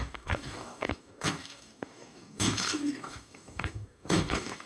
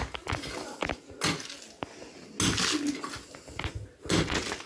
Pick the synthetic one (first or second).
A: first